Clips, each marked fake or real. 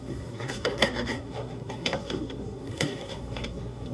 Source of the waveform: fake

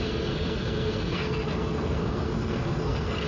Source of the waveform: fake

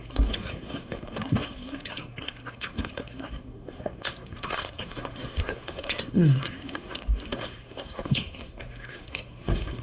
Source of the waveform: fake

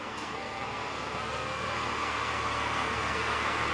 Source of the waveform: fake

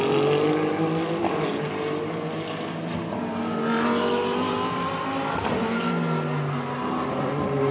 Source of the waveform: real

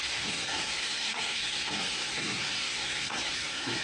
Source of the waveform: fake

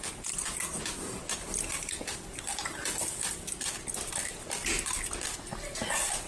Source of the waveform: real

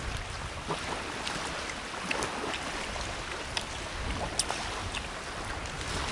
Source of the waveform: real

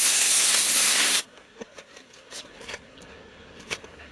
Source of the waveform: fake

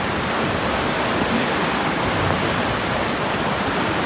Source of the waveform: real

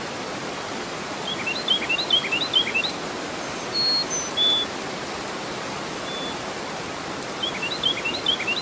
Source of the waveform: real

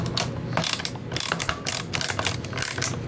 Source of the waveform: real